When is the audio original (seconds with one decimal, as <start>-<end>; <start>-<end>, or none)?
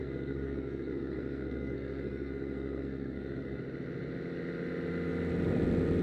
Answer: 3.6-6.0